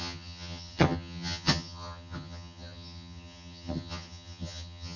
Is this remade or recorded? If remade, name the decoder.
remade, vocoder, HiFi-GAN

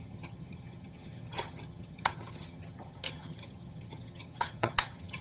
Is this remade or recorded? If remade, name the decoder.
remade, vocoder, HiFi-GAN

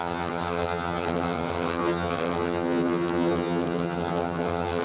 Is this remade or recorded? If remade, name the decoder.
remade, vocoder, HiFi-GAN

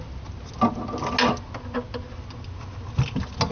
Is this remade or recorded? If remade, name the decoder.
recorded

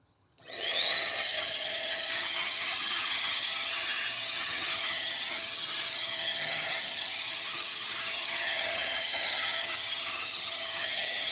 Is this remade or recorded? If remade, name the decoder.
remade, vocoder, HiFi-GAN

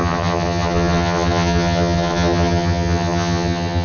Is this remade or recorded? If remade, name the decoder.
remade, vocoder, HiFi-GAN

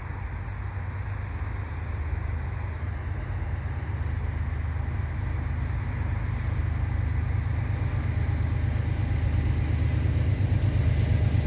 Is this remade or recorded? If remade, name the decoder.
recorded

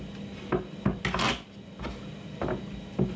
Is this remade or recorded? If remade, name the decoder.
recorded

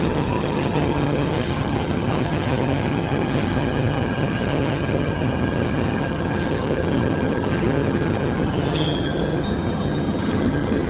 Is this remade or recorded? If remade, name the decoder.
remade, vocoder, HiFi-GAN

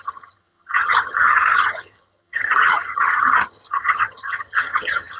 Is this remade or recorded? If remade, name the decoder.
remade, vocoder, HiFi-GAN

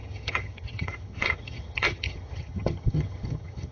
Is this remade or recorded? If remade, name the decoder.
remade, vocoder, HiFi-GAN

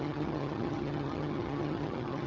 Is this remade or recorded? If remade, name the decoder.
remade, vocoder, HiFi-GAN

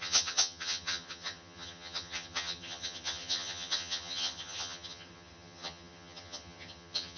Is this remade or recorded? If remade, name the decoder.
remade, vocoder, HiFi-GAN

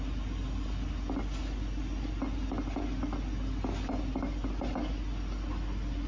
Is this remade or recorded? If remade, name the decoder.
recorded